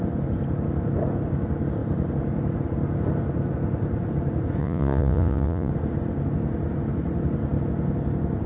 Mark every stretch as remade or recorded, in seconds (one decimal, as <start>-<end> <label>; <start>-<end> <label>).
0.0-4.6 recorded; 4.6-5.7 remade; 5.7-8.5 recorded